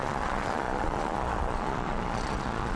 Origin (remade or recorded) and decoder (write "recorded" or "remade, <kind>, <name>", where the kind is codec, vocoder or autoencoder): remade, vocoder, Vocos